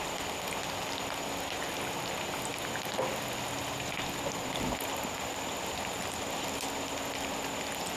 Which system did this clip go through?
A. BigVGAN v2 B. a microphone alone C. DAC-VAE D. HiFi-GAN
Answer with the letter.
B